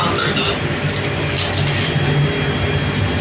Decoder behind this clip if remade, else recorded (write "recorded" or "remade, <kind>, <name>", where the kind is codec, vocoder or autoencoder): recorded